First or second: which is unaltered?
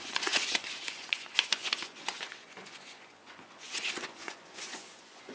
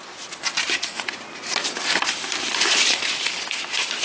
second